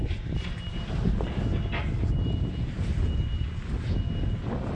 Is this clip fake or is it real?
real